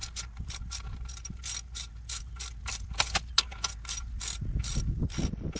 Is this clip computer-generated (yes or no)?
no